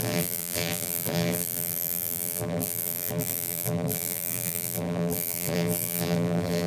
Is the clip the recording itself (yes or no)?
no